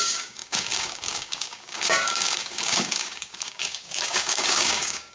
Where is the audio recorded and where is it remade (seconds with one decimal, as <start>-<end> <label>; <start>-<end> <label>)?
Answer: 0.0-5.1 remade